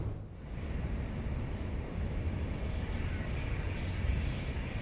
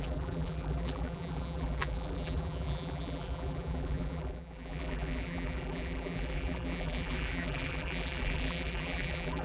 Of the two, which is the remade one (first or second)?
second